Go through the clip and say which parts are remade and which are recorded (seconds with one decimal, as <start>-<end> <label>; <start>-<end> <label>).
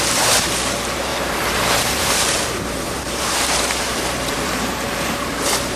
0.0-5.8 remade